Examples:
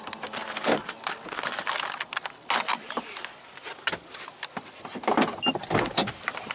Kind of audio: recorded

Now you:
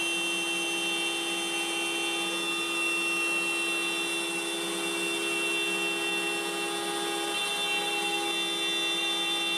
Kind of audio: recorded